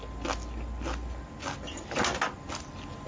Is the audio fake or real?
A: real